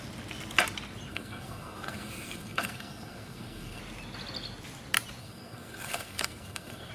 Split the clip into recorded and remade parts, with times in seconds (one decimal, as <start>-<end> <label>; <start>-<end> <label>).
0.0-1.1 recorded; 1.1-3.8 remade; 3.8-5.2 recorded; 5.2-6.9 remade